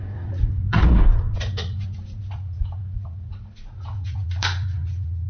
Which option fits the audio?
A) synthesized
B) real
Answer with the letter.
A